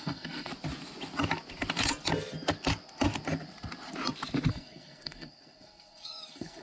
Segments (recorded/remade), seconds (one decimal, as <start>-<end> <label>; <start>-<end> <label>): 0.0-0.5 remade; 0.5-4.5 recorded; 4.5-6.6 remade